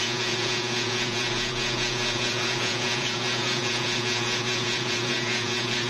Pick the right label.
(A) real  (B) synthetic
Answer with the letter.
B